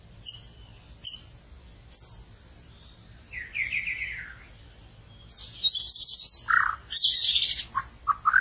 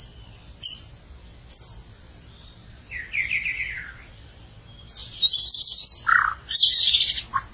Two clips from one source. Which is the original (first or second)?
first